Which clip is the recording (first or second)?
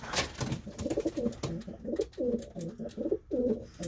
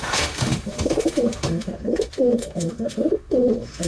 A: first